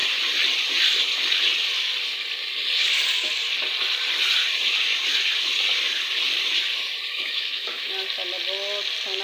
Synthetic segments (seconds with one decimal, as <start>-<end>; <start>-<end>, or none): 7.1-7.9